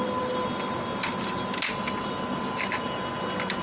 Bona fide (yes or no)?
yes